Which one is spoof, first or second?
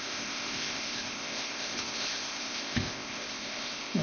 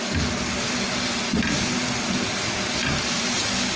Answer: first